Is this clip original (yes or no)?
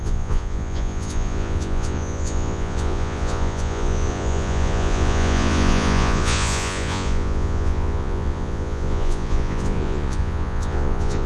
no